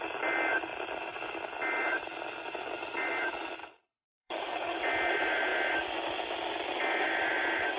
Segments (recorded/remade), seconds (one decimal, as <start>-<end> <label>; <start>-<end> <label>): 0.0-3.6 recorded; 3.6-4.8 remade; 4.8-7.8 recorded